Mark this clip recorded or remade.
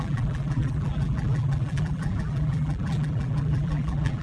remade